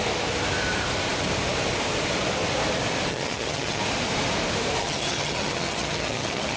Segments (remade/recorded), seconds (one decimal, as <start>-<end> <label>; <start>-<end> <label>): 0.0-3.1 recorded; 3.1-3.8 remade; 3.8-4.8 recorded; 4.8-6.6 remade

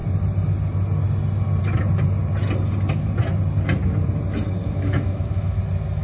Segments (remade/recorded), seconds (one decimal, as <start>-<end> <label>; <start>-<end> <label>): 0.0-4.6 recorded; 4.6-5.6 remade; 5.6-6.0 recorded

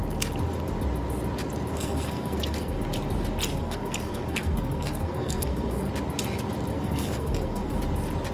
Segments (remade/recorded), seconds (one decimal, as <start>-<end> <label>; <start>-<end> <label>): 0.0-1.7 recorded; 1.7-2.8 remade; 2.8-3.5 recorded; 3.5-5.9 remade; 5.9-6.7 recorded; 6.7-7.8 remade; 7.8-8.3 recorded

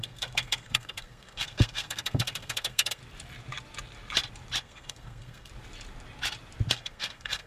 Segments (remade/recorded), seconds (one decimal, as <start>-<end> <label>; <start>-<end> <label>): 0.0-3.0 remade; 3.0-4.6 recorded; 4.6-5.5 remade; 5.5-6.7 recorded; 6.7-7.5 remade

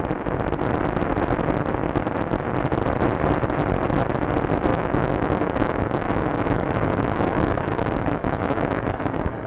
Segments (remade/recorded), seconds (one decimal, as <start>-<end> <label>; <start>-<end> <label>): 0.0-4.7 recorded; 4.7-9.5 remade

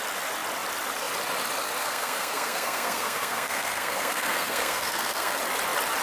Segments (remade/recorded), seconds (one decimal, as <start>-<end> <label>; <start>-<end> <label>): 0.0-1.8 recorded; 1.8-5.4 remade; 5.4-6.0 recorded

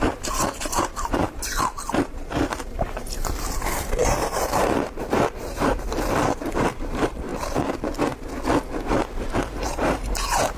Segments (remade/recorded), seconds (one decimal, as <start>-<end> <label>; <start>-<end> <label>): 0.0-7.3 remade; 7.3-9.6 recorded; 9.6-10.6 remade